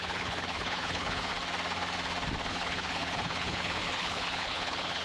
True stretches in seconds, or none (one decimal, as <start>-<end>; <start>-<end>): 1.3-2.5